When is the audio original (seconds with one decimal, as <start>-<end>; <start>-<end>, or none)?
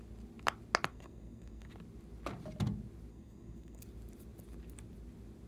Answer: 0.0-0.9; 1.7-3.1; 3.8-5.5